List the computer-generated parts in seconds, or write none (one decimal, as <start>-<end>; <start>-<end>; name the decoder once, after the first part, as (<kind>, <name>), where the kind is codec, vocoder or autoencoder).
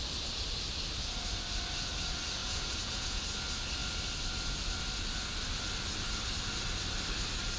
2.4-3.2 (vocoder, Vocos)